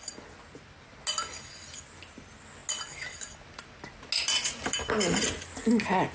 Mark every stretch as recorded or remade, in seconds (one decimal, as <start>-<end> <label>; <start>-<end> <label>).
0.0-6.1 recorded